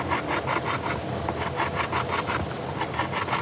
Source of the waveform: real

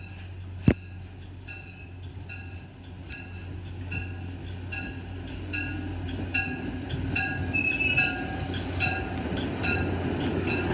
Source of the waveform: real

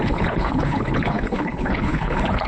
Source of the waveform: fake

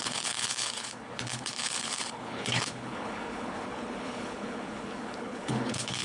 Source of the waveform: fake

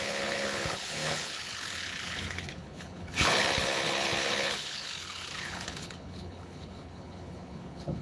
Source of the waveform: fake